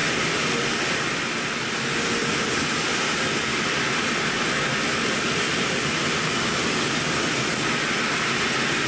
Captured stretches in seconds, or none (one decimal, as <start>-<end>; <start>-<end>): 0.0-8.9